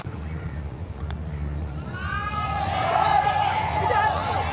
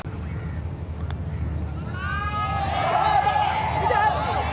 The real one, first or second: second